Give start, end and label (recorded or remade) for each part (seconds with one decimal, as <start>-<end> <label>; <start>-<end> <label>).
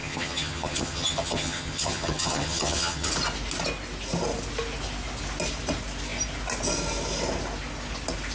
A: 0.0-3.1 remade; 3.1-8.3 recorded